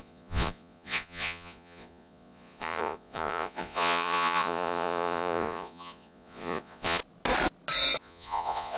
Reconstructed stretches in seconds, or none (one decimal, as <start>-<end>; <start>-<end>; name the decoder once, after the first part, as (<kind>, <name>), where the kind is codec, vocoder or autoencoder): 0.0-7.0 (vocoder, Vocos); 8.0-8.8